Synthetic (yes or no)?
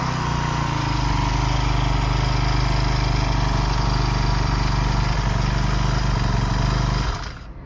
no